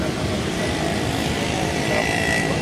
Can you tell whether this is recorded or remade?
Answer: recorded